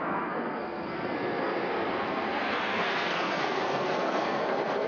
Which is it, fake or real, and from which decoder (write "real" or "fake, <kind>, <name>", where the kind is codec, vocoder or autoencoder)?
fake, codec, SNAC